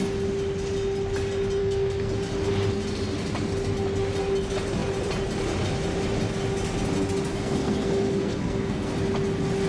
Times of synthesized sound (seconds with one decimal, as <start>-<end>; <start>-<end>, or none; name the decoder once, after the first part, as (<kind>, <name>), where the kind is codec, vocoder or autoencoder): 1.6-2.1 (codec, SNAC); 7.3-8.9